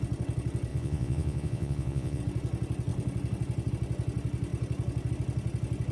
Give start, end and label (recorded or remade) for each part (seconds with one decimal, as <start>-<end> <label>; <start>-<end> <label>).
0.0-0.7 recorded; 0.7-2.2 remade; 2.2-5.9 recorded